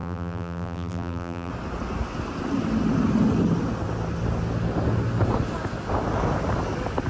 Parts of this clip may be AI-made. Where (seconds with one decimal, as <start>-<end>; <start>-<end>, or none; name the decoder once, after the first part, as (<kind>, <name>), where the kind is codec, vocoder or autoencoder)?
0.0-1.5 (vocoder, BigVGAN v2)